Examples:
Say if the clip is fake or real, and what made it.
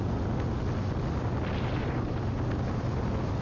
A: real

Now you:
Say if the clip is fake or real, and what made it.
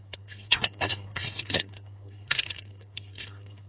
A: fake, codec, SNAC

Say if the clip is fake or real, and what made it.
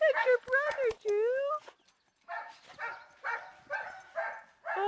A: real